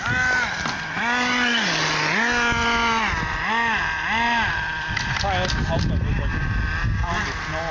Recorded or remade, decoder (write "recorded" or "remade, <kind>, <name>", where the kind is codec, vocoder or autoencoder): recorded